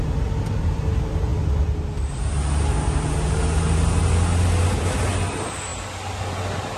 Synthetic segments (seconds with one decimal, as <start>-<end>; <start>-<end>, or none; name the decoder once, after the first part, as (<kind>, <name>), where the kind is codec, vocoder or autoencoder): none